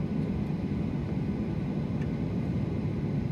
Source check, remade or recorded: recorded